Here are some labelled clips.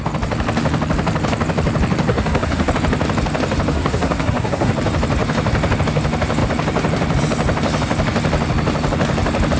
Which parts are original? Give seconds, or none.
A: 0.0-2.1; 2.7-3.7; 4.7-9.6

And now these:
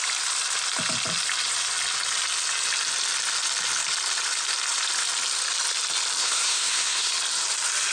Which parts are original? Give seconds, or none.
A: 0.0-6.2; 7.1-7.9

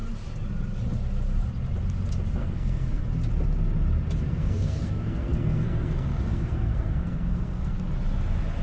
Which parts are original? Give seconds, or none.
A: 0.0-2.4; 3.0-4.3; 7.8-8.6

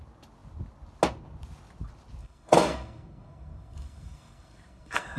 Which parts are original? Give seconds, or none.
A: 0.0-2.2